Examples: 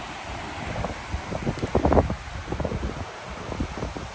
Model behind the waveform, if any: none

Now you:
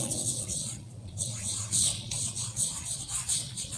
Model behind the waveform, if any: vocoder, Vocos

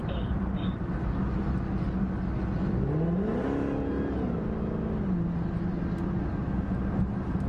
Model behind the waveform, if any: none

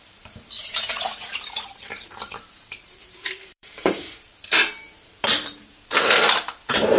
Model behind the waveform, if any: vocoder, BigVGAN v2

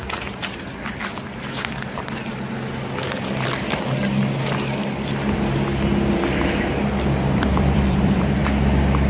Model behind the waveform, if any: vocoder, BigVGAN v2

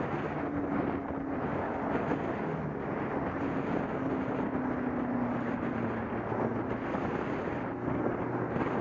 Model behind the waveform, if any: none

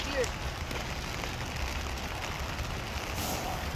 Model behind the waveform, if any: none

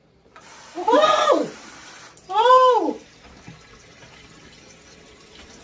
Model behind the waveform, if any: vocoder, BigVGAN v2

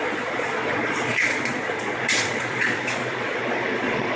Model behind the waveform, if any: vocoder, Vocos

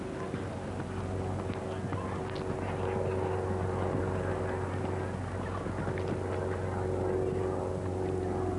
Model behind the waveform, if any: none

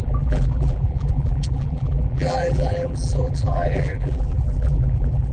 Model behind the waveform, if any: vocoder, BigVGAN v2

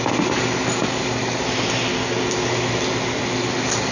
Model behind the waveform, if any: none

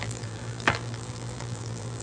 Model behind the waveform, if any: vocoder, BigVGAN v2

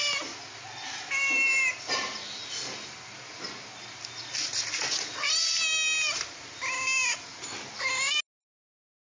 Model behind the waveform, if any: none